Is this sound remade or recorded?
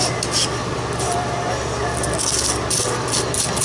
recorded